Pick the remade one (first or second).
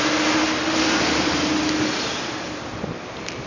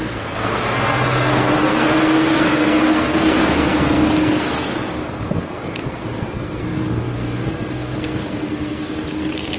second